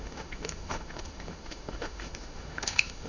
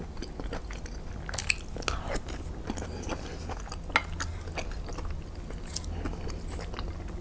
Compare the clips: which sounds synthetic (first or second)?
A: first